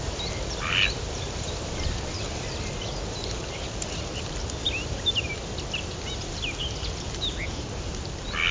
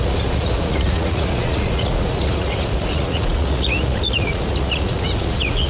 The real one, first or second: first